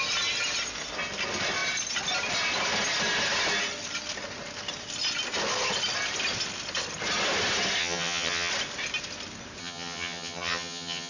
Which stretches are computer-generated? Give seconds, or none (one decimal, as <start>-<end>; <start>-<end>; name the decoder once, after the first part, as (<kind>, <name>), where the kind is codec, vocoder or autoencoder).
7.8-8.5 (vocoder, HiFi-GAN); 9.6-11.1